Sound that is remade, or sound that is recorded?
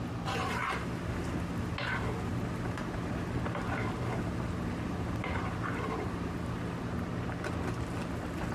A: recorded